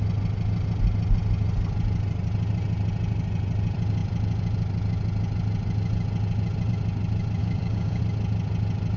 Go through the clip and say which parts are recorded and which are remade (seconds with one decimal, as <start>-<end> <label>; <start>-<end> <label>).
0.0-7.4 recorded; 7.4-8.0 remade; 8.0-9.0 recorded